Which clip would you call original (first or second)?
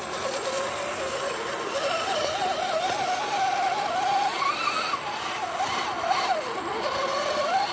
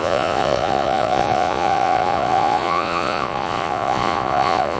first